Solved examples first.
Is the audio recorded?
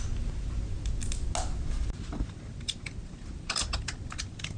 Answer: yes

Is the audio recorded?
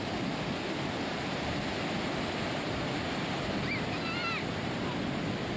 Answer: yes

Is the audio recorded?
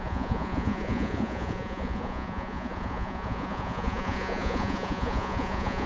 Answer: no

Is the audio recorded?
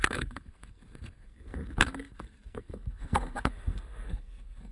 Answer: no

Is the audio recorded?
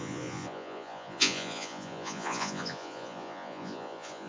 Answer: no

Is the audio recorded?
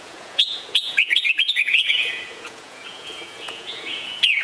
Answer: no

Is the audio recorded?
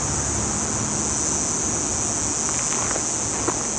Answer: yes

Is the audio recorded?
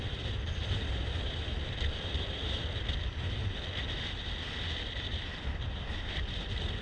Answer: yes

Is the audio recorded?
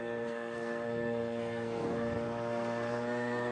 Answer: no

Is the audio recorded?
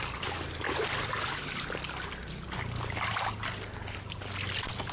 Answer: yes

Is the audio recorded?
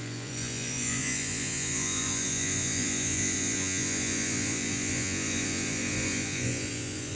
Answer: no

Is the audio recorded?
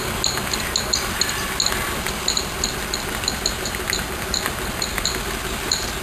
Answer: yes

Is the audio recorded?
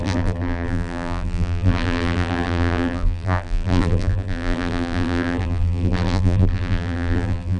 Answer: no